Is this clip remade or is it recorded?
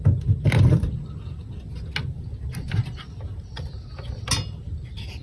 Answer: recorded